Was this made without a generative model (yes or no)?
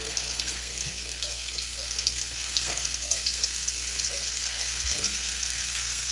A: no